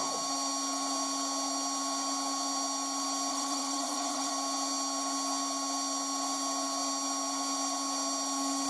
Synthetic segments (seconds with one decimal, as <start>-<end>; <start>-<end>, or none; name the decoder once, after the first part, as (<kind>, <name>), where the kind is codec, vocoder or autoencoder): 3.3-4.3 (vocoder, WaveNeXt)